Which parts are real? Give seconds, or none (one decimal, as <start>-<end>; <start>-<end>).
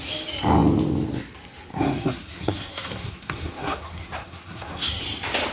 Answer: 0.0-1.7; 5.0-5.5